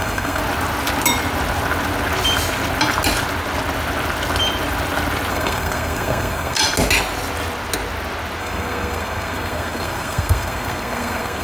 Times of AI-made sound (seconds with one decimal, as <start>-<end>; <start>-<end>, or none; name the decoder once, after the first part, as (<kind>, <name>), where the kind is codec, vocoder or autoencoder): 0.0-0.4 (codec, SNAC); 5.3-6.6; 8.4-11.4